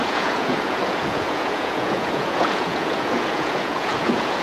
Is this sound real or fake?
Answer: fake